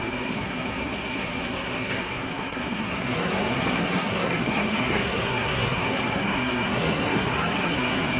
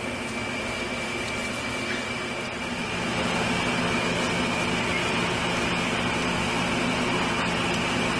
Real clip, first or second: second